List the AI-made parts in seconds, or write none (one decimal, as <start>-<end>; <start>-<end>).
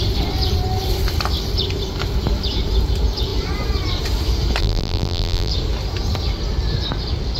4.6-5.5